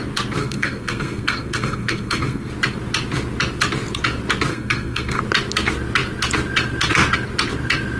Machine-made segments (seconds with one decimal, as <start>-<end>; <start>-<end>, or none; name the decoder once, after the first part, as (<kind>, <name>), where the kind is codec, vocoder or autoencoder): 0.4-2.5 (codec, SNAC); 4.5-5.2